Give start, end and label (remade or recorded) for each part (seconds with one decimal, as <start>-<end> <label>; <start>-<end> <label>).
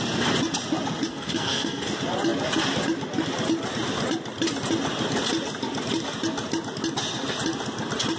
0.0-1.1 recorded; 1.1-1.8 remade; 1.8-8.2 recorded